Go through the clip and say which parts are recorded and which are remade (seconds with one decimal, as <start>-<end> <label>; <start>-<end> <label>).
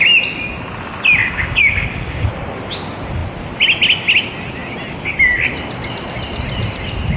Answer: 0.0-1.2 recorded; 1.2-2.3 remade; 2.3-7.2 recorded